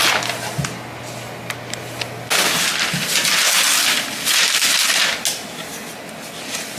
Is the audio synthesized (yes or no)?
no